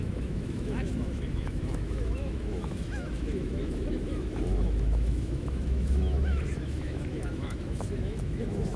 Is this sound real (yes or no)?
no